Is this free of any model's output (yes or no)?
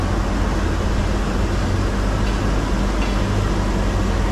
yes